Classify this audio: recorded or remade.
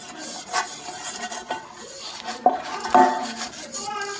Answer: recorded